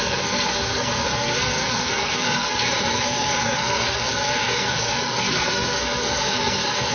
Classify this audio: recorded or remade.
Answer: remade